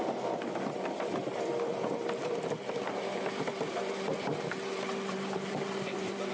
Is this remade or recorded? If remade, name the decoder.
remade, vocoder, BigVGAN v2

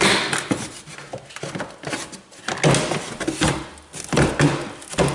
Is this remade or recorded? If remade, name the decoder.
recorded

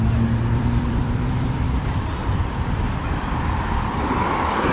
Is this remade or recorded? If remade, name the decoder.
remade, vocoder, BigVGAN v2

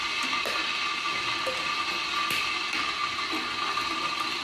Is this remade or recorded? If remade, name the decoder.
recorded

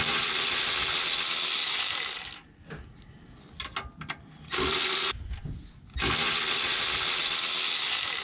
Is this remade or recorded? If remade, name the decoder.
recorded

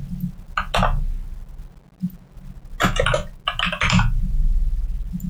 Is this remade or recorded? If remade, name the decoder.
recorded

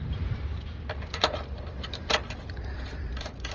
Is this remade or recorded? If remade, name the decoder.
remade, vocoder, BigVGAN v2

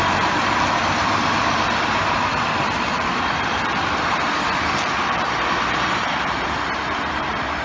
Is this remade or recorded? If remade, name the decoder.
remade, vocoder, BigVGAN v2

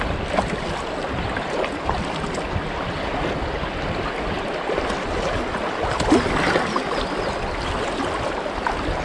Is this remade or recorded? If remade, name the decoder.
recorded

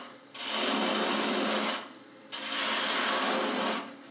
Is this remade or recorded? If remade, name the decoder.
recorded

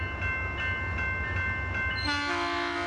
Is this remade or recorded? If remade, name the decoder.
recorded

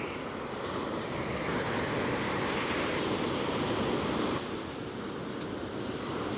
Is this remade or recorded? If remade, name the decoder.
recorded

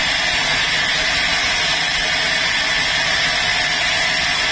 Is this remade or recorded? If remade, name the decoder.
recorded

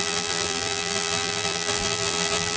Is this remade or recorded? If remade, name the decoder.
remade, vocoder, BigVGAN v2